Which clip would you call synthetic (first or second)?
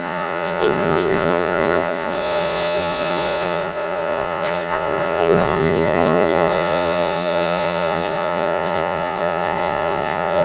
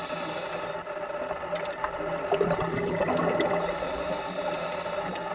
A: first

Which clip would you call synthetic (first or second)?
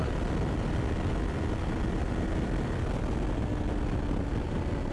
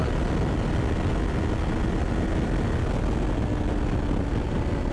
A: first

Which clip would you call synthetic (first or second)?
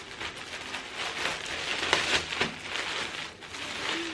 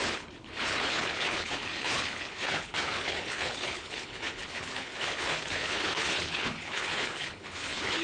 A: second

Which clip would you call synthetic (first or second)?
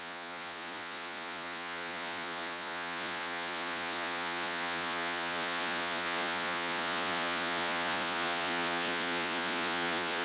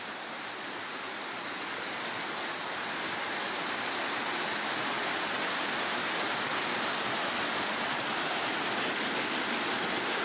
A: first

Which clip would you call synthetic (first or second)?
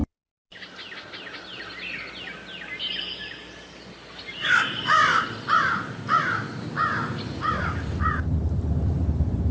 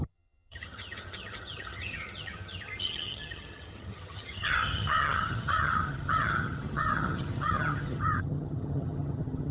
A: second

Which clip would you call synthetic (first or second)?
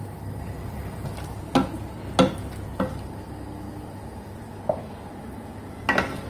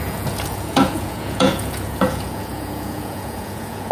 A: second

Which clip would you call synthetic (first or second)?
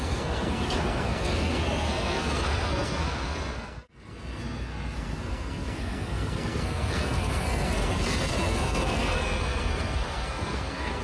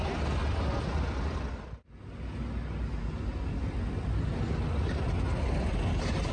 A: first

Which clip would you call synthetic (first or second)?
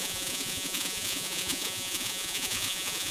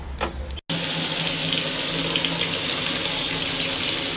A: first